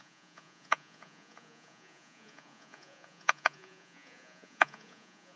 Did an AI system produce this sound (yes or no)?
yes